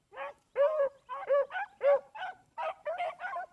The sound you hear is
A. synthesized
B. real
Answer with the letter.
B